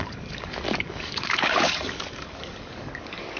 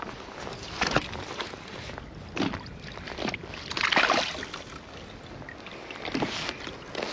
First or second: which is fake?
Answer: first